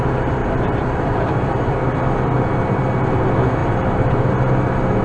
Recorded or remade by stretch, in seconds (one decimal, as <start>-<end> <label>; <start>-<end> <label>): 0.0-0.4 recorded; 0.4-1.9 remade; 1.9-3.6 recorded; 3.6-4.3 remade; 4.3-5.0 recorded